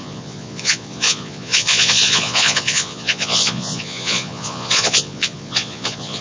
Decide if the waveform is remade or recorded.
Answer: remade